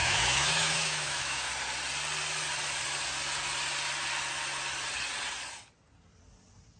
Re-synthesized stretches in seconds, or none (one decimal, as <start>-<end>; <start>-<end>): 0.0-1.5